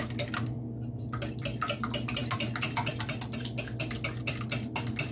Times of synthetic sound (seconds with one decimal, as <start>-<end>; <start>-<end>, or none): none